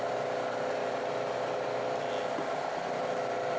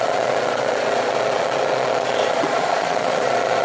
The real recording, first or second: first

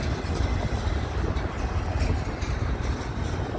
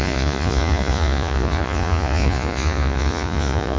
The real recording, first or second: first